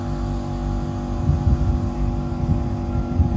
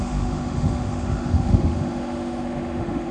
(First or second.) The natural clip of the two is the first